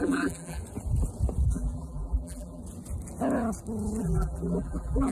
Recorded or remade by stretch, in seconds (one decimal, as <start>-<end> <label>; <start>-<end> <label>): 0.0-0.6 remade; 0.6-1.5 recorded; 1.5-2.6 remade; 2.6-4.0 recorded; 4.0-5.1 remade